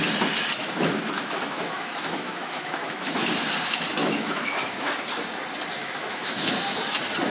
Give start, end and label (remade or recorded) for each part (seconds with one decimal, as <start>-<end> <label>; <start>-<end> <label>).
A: 0.0-0.6 recorded; 0.6-3.3 remade; 3.3-4.0 recorded; 4.0-4.9 remade; 4.9-5.8 recorded; 5.8-6.5 remade; 6.5-7.3 recorded